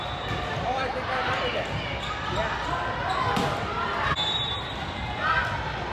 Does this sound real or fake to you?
real